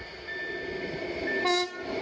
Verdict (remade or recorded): recorded